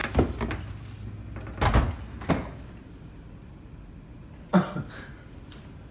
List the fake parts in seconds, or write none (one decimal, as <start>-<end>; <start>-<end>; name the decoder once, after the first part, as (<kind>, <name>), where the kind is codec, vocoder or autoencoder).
none